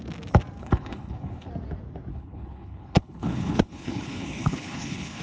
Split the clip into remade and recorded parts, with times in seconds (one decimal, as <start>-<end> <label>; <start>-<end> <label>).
0.0-0.6 recorded; 0.6-1.5 remade; 1.5-2.1 recorded; 2.1-5.2 remade